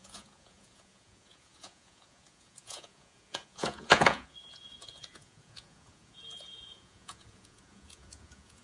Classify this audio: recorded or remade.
remade